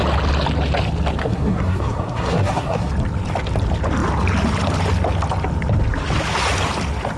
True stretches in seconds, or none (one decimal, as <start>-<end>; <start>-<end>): 0.0-1.2; 2.9-7.2

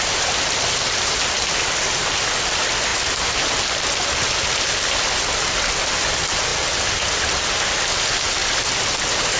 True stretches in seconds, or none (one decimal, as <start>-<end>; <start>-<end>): 0.0-6.5; 7.2-8.4; 9.0-9.4

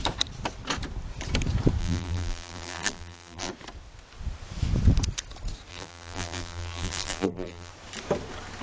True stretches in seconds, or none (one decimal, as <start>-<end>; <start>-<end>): 0.0-1.8; 3.5-5.7; 7.7-8.6

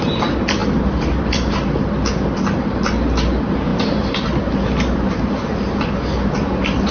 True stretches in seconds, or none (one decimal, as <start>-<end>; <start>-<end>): 0.0-0.6; 1.5-6.9

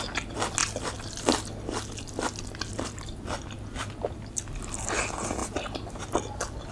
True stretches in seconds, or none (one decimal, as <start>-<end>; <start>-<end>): 0.0-6.7